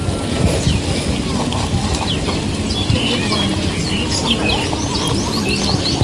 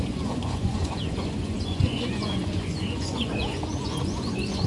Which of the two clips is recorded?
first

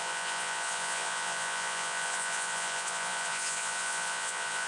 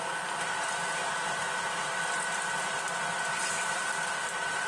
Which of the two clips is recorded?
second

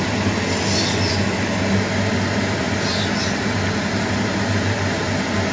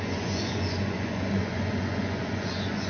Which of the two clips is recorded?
first